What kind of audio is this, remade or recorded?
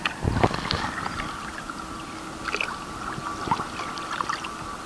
recorded